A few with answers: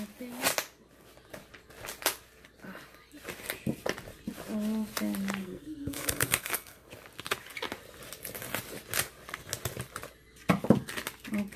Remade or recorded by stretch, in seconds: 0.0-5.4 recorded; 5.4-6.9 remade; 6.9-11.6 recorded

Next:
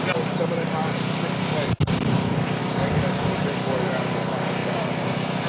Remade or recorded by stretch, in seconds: 0.0-5.5 recorded

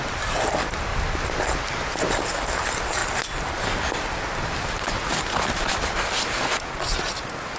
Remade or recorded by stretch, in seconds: 0.0-7.6 recorded

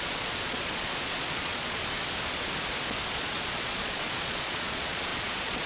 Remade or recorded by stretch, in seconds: 0.0-1.8 remade; 1.8-3.1 recorded; 3.1-5.7 remade

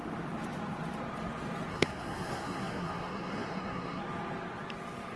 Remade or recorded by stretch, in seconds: 0.0-1.7 recorded; 1.7-4.0 remade; 4.0-5.2 recorded